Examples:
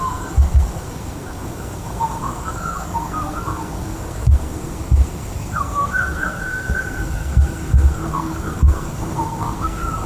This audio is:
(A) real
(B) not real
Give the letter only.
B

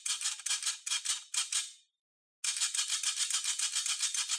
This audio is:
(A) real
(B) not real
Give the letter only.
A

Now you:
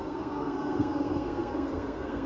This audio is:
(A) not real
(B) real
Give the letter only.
A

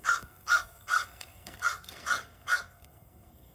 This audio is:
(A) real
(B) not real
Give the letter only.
B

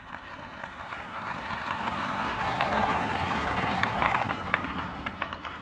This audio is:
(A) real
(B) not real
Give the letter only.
B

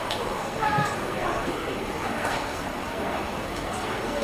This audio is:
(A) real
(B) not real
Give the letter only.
B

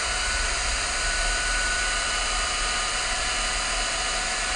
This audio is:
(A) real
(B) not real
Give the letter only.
A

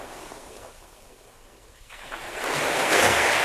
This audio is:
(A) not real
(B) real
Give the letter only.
A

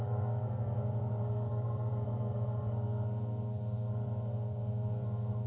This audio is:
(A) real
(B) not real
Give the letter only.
B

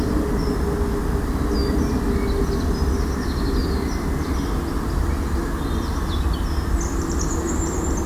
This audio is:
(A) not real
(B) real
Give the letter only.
B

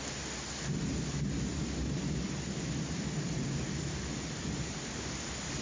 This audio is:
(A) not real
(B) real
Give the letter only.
B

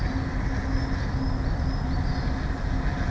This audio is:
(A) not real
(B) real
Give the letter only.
B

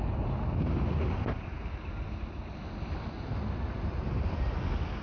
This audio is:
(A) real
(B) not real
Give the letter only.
A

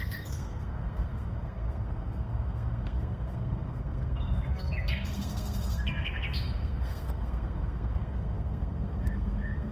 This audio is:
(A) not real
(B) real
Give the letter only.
A